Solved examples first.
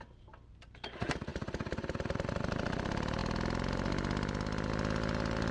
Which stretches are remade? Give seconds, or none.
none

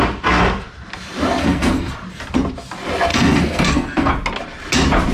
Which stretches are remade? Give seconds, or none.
1.4-1.9 (codec, SNAC); 3.1-4.1

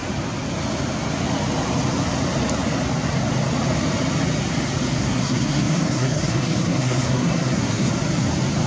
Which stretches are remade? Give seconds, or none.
5.0-7.9 (codec, SNAC)

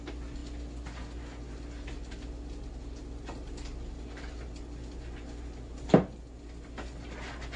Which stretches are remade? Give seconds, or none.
none

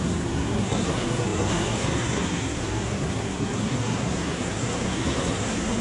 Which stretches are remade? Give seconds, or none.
0.0-5.8 (codec, SNAC)

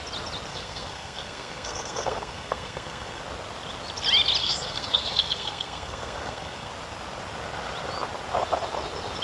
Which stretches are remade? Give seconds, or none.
0.5-3.2 (codec, SNAC); 4.4-6.7